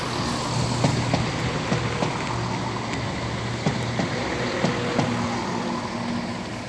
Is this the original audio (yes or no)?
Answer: yes